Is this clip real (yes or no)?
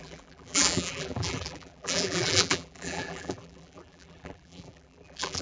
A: no